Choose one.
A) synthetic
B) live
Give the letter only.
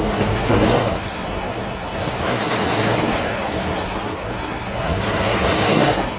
A